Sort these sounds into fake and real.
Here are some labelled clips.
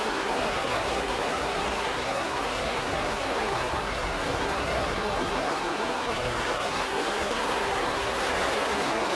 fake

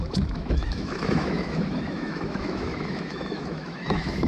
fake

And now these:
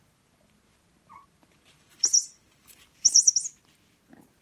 fake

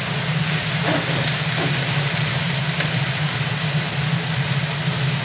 real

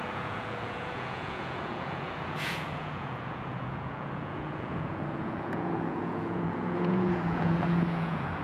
fake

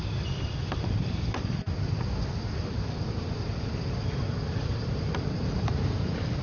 real